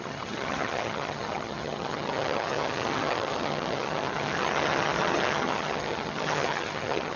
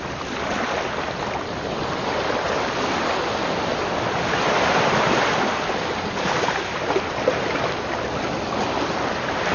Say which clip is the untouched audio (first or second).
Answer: second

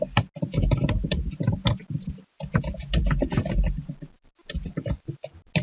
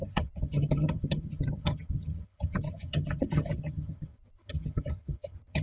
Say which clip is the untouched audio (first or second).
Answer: first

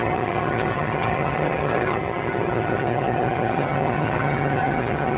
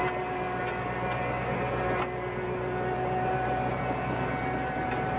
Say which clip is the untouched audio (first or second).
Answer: second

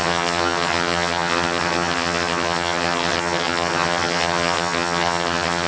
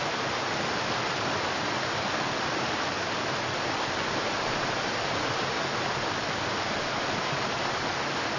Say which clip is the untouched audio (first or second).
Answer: second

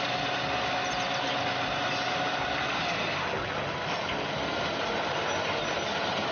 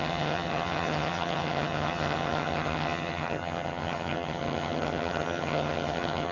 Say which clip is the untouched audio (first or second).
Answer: first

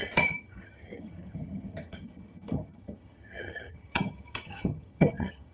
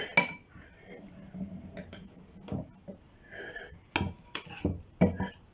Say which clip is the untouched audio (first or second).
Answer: second